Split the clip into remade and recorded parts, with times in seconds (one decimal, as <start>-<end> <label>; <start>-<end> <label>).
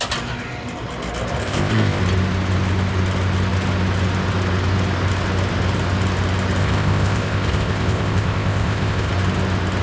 0.0-1.4 recorded; 1.4-2.0 remade; 2.0-6.6 recorded; 6.6-9.1 remade; 9.1-9.8 recorded